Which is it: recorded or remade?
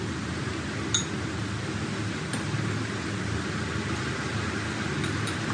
recorded